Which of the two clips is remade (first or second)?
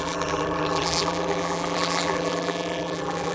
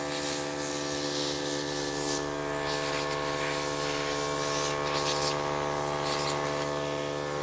first